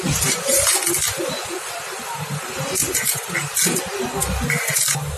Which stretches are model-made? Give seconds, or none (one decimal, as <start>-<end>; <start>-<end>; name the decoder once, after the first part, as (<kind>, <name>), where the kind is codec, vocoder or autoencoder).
2.8-3.3 (vocoder, BigVGAN v2)